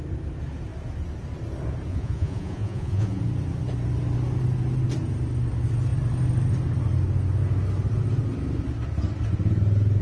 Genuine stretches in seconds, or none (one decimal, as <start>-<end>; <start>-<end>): 0.0-1.9; 3.2-10.0